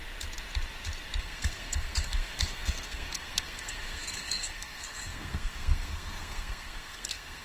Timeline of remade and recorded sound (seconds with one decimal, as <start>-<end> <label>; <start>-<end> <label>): 0.0-1.2 recorded; 1.2-7.4 remade